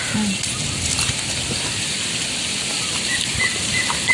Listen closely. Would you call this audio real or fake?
real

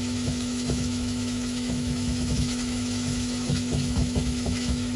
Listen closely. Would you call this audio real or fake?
fake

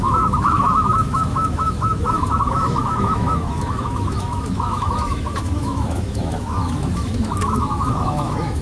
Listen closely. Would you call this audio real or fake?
fake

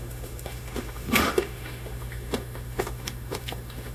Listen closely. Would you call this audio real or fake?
fake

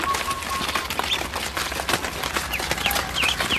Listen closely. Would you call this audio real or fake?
real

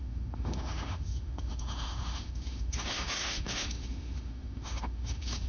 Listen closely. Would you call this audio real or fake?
fake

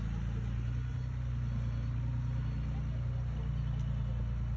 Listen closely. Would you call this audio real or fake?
real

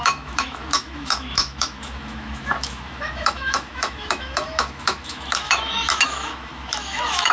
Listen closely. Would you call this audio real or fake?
fake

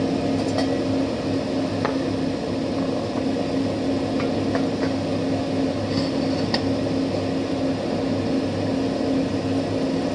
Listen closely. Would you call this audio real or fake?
real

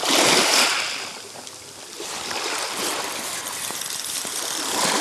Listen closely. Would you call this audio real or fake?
real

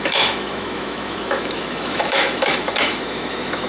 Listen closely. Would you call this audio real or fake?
fake